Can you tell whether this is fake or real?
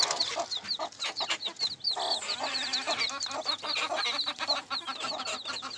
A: real